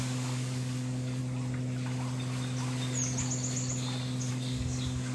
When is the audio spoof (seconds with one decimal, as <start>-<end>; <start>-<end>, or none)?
0.0-1.2; 4.3-5.1